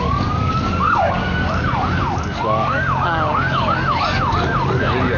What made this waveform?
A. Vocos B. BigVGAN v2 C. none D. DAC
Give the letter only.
D